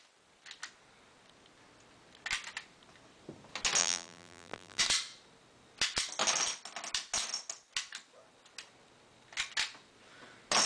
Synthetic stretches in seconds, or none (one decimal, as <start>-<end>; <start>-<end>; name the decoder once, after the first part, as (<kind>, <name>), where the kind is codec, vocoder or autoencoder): 3.8-4.8 (vocoder, BigVGAN v2)